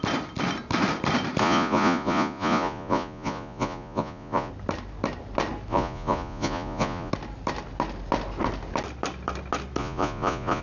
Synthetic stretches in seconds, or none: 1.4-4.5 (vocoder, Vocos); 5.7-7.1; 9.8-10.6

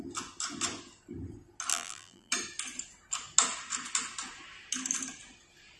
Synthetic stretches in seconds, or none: 1.7-2.3 (vocoder, BigVGAN v2)

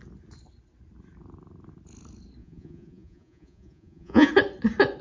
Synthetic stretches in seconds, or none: 2.4-4.3 (vocoder, Vocos)

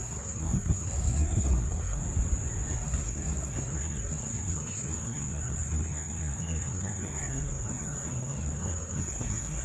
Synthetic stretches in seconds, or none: 0.0-2.0 (codec, SNAC); 2.7-9.6

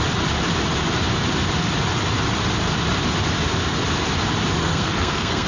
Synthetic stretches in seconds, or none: 4.6-5.5 (codec, SNAC)

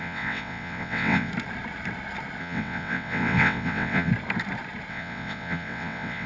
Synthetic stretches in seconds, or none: 0.0-1.3 (vocoder, WaveNeXt); 2.4-4.1; 4.9-6.3